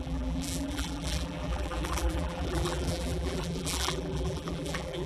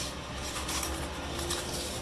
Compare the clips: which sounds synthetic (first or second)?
first